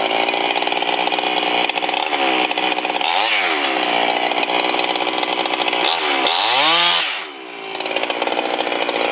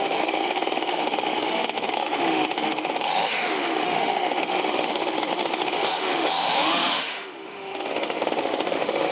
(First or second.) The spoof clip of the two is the second